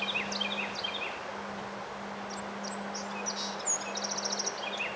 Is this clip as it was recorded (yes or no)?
yes